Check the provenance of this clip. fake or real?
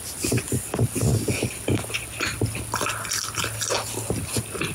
real